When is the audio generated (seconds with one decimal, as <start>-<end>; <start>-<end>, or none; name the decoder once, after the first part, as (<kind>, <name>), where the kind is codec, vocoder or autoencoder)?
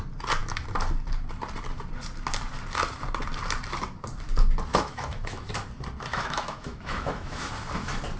4.7-5.5 (autoencoder, DAC-VAE); 6.1-7.5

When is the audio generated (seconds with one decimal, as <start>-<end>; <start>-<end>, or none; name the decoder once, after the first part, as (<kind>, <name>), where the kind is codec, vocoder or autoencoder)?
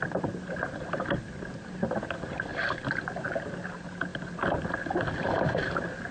none